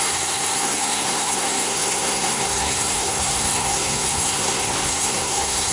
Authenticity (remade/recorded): remade